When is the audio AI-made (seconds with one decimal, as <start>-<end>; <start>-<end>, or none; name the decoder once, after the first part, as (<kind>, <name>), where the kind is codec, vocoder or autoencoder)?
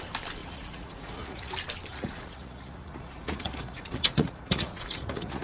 0.4-1.5 (vocoder, Vocos); 1.9-5.4